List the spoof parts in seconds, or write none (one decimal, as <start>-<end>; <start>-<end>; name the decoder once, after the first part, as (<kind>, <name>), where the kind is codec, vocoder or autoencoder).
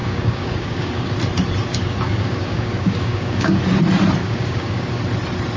0.0-1.1 (codec, DAC); 1.7-3.6; 4.2-5.0